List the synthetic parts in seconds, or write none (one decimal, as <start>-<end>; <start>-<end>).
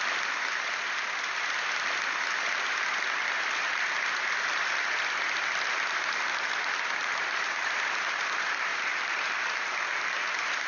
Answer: 7.1-7.8; 8.7-9.4